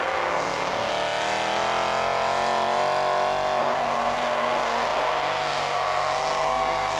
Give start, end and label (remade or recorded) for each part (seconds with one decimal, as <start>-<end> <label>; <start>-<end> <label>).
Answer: 0.0-0.9 remade; 0.9-3.6 recorded; 3.6-7.0 remade